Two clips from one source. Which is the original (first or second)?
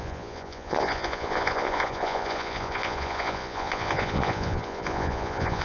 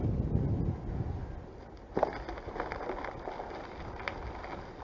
second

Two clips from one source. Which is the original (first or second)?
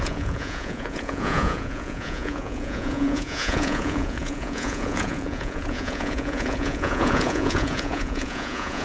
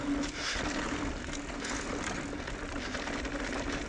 second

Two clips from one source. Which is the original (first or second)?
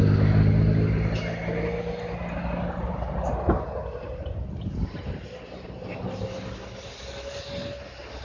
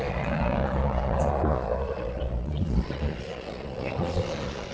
first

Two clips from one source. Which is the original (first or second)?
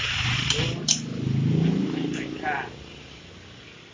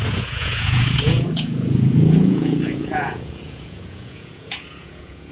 first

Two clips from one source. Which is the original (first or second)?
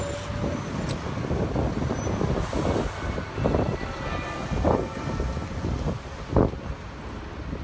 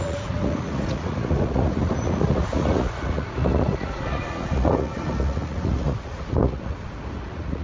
first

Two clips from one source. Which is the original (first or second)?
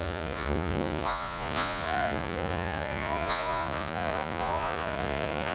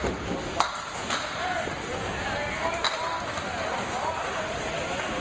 second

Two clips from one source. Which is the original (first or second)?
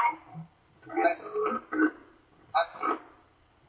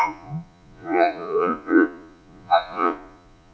first